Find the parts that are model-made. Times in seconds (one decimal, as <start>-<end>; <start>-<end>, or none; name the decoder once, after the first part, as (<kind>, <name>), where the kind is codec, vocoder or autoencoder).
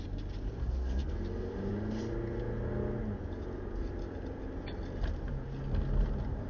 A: 0.6-1.2 (codec, SNAC)